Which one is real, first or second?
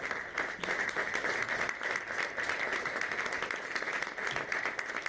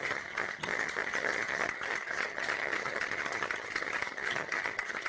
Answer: first